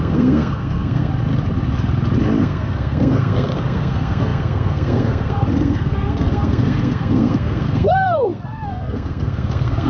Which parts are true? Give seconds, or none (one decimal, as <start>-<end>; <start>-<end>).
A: 1.1-2.4